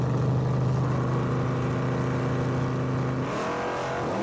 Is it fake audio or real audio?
real